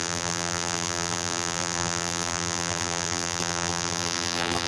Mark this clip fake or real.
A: fake